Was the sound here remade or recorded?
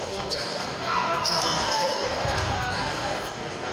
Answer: remade